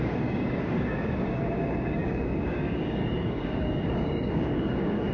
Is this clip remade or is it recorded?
remade